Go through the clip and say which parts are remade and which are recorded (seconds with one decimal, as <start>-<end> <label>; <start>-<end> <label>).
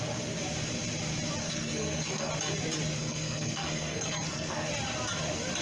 0.0-1.4 recorded; 1.4-2.3 remade; 2.3-3.0 recorded; 3.0-4.7 remade; 4.7-5.6 recorded